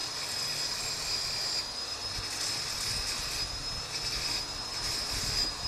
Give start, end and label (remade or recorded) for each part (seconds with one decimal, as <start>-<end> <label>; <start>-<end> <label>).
0.0-5.7 recorded